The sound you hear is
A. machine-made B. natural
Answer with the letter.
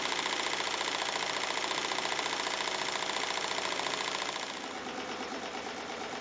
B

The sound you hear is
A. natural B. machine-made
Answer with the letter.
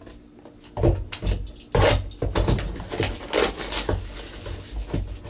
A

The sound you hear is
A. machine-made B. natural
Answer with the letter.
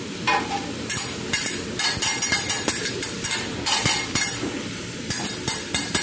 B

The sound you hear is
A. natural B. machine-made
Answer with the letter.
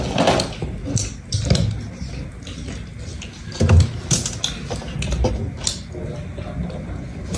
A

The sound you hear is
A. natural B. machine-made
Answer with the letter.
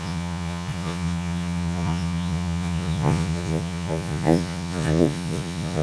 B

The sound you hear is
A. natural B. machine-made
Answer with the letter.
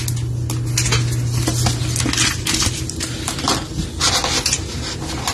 A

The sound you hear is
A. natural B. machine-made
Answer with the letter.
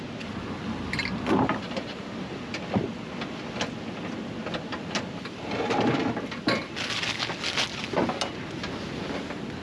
A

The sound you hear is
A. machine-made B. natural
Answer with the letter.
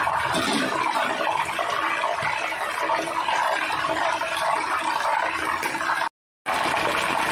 B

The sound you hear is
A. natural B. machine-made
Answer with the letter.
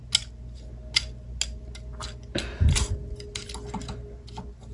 A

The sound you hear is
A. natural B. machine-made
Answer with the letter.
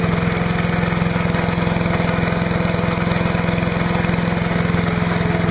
A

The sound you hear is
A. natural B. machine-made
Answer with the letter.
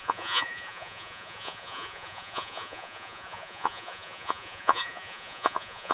B